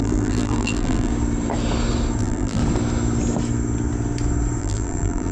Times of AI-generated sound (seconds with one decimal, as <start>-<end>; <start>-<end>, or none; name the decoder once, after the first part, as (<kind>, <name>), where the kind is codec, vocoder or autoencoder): 0.0-1.1 (vocoder, BigVGAN v2); 2.2-2.6; 4.6-5.3